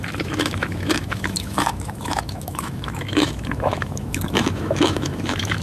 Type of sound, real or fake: fake